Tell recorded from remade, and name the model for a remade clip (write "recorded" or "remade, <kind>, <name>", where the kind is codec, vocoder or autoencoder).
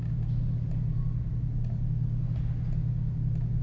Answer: recorded